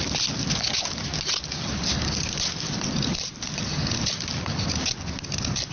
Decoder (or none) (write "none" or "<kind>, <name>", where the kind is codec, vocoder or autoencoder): none